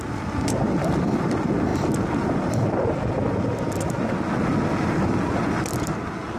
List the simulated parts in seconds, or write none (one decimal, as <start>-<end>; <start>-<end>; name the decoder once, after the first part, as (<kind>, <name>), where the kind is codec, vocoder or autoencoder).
none